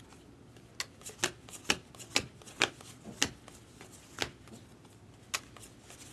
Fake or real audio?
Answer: real